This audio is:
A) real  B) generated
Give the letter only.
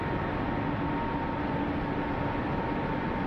A